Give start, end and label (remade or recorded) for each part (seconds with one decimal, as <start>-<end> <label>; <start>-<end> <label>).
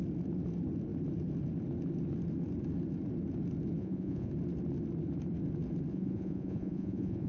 0.0-3.8 recorded; 3.8-4.3 remade; 4.3-5.9 recorded; 5.9-7.3 remade